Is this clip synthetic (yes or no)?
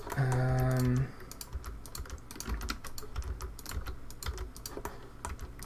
no